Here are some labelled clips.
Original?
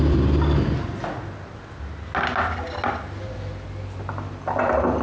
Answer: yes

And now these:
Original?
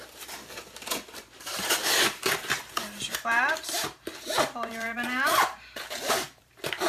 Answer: no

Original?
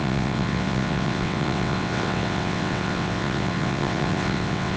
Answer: no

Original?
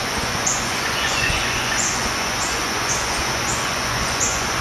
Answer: no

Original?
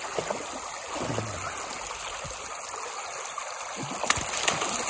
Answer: yes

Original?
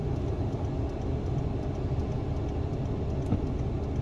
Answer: yes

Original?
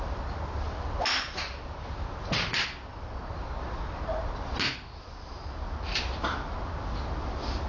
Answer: yes